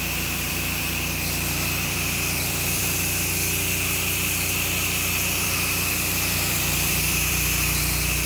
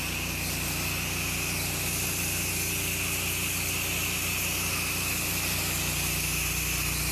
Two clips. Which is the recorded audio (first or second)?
second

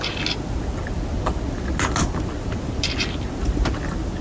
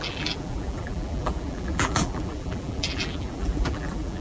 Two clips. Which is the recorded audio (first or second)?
first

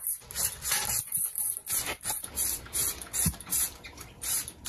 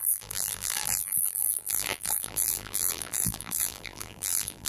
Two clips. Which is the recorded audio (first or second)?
first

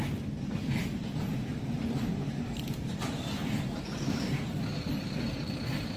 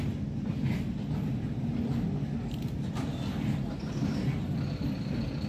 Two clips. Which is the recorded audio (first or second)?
second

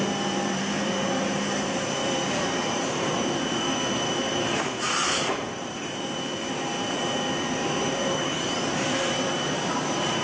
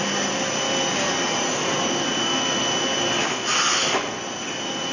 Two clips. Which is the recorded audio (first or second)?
second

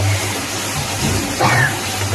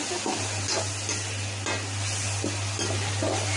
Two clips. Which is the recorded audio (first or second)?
second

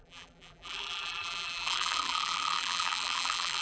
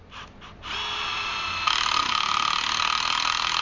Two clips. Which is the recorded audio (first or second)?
second